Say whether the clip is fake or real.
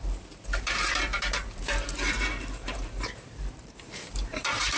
fake